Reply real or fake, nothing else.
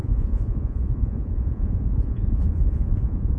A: fake